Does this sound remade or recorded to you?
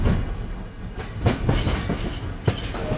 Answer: recorded